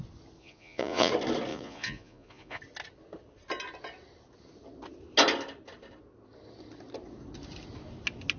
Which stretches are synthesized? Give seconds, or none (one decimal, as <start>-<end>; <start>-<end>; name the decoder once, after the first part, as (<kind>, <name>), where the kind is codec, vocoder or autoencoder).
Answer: 0.4-1.1 (vocoder, Vocos); 1.5-2.6